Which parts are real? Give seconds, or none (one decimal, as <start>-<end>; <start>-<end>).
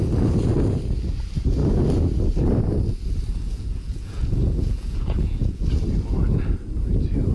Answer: 0.0-3.3; 5.7-7.3